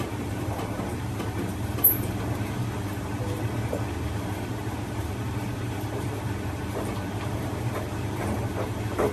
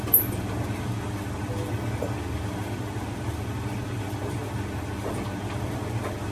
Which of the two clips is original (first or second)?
second